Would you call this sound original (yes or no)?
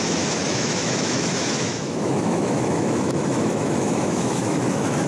no